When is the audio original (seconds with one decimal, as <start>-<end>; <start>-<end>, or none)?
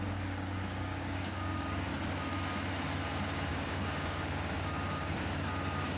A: 1.9-3.5